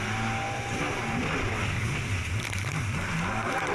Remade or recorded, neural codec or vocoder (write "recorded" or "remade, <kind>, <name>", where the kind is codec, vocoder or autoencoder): recorded